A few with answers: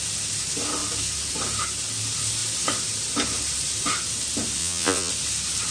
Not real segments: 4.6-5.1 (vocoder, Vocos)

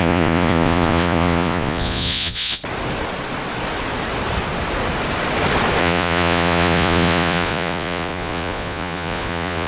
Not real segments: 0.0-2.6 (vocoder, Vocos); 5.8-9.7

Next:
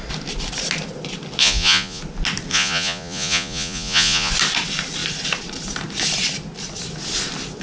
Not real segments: 1.4-2.0 (vocoder, Vocos); 2.5-4.3

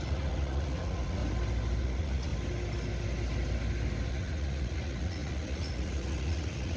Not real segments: 0.0-1.2 (vocoder, Vocos); 1.8-2.3; 4.1-6.8